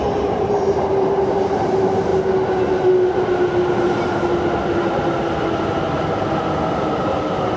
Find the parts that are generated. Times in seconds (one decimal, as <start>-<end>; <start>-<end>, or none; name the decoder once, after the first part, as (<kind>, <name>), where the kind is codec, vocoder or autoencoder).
0.0-2.1 (vocoder, BigVGAN v2); 6.7-7.6